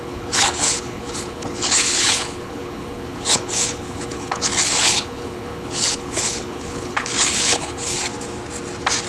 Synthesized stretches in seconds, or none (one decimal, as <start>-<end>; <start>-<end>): 0.0-8.0